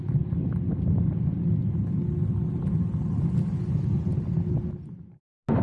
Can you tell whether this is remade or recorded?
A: recorded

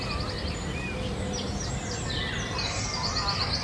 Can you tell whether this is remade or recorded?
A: recorded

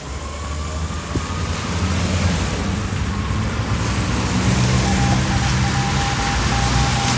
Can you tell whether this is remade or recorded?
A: recorded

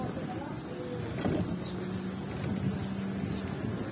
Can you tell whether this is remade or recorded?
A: recorded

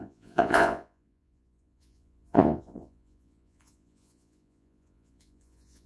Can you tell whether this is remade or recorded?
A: remade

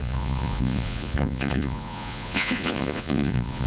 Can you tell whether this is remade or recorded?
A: remade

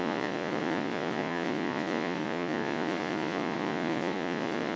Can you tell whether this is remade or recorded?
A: remade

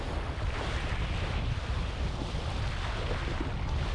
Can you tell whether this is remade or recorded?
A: recorded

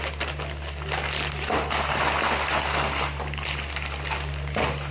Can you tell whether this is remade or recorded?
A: recorded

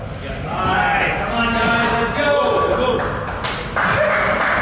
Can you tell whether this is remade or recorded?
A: recorded